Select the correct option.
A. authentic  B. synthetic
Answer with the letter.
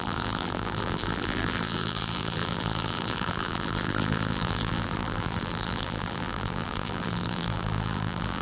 B